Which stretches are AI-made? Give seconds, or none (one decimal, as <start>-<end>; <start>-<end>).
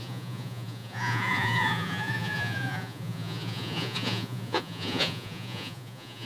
0.0-6.3